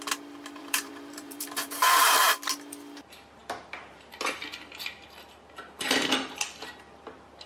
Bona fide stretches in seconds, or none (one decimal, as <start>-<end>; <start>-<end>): 0.0-0.6; 2.1-7.5